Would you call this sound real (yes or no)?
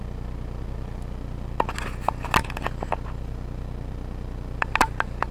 yes